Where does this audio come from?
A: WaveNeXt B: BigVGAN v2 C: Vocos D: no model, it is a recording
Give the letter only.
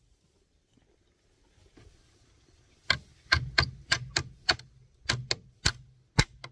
D